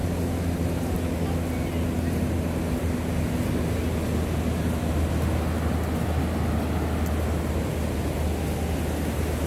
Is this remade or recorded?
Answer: recorded